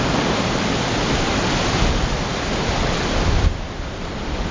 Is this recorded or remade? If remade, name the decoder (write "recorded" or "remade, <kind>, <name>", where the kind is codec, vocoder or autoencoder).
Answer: recorded